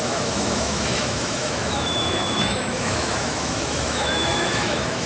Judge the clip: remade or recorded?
remade